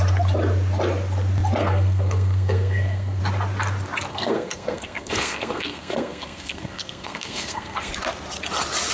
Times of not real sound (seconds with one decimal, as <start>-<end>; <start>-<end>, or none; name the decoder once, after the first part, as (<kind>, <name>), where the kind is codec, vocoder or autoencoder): 1.6-3.2 (codec, SNAC); 4.1-7.9